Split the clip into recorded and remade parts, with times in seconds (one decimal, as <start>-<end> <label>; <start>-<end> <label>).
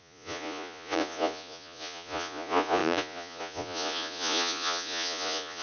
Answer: 0.0-5.6 remade